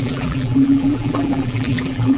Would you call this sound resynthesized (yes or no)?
yes